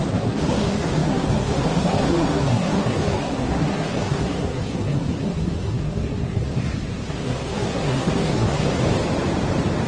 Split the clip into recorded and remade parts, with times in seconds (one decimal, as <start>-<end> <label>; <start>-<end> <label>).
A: 0.0-8.8 remade; 8.8-9.9 recorded